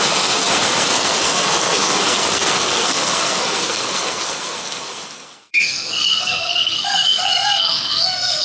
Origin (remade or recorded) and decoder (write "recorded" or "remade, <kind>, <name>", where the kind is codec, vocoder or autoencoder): remade, codec, SNAC